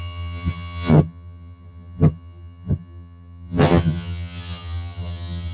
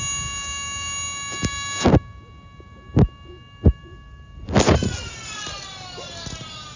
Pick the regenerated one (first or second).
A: first